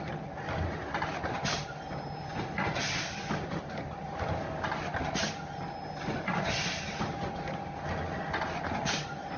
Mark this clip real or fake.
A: real